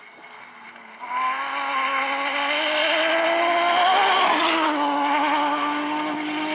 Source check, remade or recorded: recorded